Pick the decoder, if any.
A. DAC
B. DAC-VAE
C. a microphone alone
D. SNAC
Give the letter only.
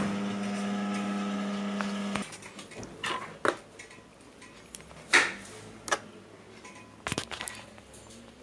C